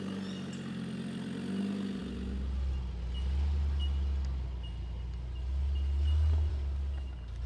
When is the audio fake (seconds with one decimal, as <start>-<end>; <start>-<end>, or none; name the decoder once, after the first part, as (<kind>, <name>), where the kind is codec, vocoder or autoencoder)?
none